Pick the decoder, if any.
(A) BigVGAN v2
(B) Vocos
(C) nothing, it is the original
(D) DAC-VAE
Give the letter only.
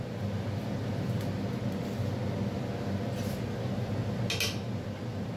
C